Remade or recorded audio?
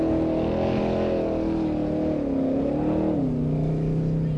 recorded